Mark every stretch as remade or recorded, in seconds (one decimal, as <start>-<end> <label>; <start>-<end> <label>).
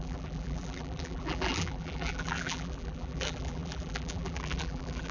0.0-5.1 remade